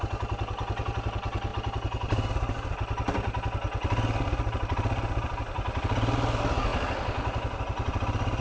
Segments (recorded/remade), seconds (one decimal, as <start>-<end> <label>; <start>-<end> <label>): 0.0-8.4 recorded